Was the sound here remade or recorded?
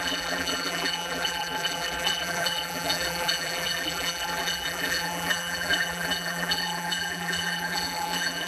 remade